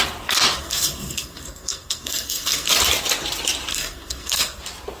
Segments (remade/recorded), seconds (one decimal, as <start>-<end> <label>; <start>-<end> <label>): 0.0-0.6 recorded; 0.6-2.7 remade; 2.7-3.7 recorded; 3.7-4.6 remade; 4.6-5.0 recorded

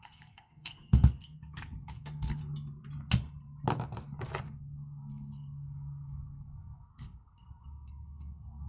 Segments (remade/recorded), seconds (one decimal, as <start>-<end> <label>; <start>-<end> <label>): 0.0-2.4 remade; 2.4-4.4 recorded; 4.4-8.7 remade

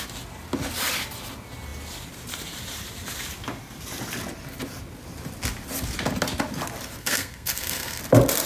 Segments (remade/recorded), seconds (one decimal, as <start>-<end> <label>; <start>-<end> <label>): 0.0-7.0 recorded; 7.0-8.0 remade; 8.0-8.5 recorded